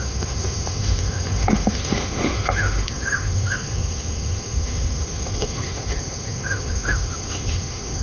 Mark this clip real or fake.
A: fake